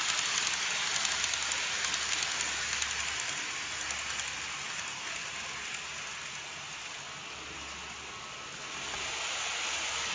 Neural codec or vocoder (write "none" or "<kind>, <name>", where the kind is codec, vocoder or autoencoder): none